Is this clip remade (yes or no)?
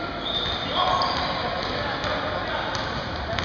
no